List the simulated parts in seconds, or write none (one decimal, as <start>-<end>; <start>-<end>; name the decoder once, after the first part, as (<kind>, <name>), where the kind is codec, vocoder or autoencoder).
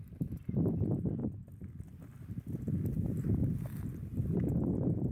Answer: 0.0-1.2 (vocoder, BigVGAN v2); 2.3-5.1